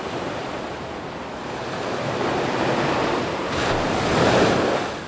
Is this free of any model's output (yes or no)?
yes